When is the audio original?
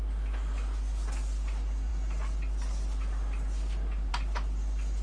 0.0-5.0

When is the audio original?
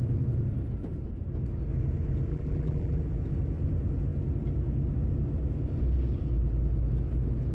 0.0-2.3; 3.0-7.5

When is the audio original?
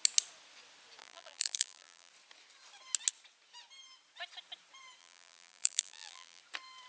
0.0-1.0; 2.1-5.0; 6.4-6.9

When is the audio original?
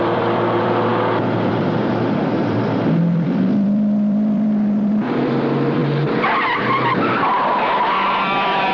none